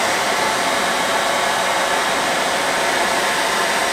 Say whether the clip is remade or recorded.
recorded